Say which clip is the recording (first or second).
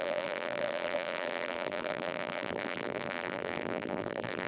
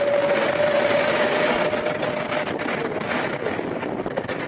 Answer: second